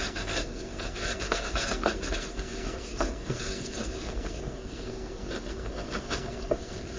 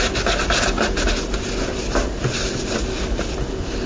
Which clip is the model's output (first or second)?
first